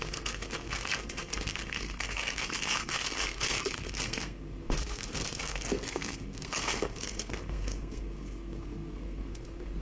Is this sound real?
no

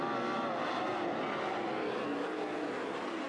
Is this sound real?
yes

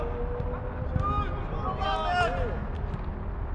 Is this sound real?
yes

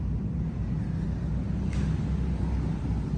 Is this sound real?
yes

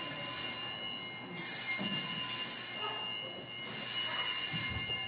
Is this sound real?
yes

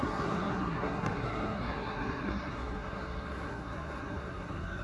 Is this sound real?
no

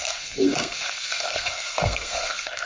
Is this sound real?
no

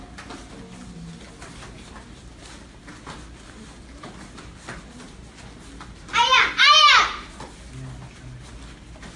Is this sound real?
yes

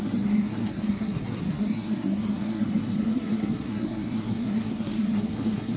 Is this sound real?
no